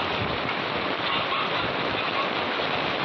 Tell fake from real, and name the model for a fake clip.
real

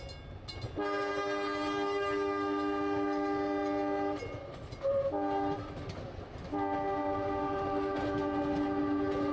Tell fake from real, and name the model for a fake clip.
real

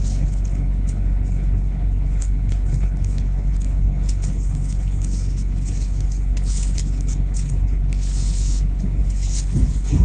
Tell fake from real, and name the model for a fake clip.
fake, codec, HILCodec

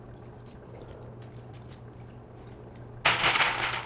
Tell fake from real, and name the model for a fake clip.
real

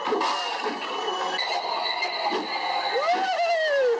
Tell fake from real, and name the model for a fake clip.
real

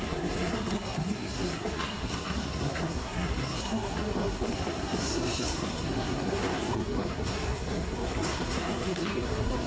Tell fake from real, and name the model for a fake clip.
fake, codec, SNAC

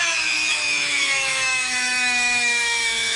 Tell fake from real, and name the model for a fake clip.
fake, autoencoder, DAC-VAE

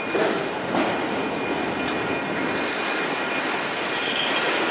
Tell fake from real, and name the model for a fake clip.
real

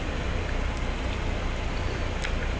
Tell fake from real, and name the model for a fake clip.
real